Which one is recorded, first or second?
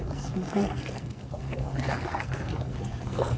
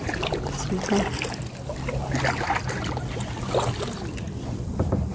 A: second